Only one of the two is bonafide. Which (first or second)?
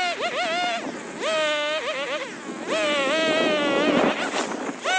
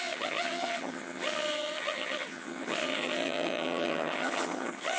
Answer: first